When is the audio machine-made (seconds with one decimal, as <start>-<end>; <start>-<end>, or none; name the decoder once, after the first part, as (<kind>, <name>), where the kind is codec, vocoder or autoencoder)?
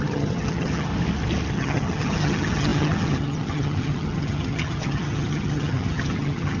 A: 0.0-0.9 (vocoder, HiFi-GAN); 1.5-6.6